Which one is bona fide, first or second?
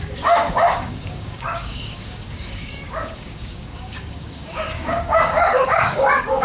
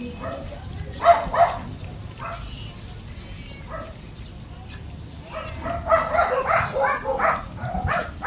second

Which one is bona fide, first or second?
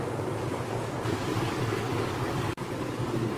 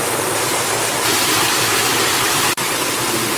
second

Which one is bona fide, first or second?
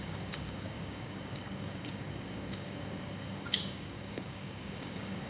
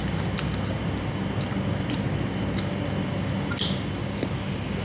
second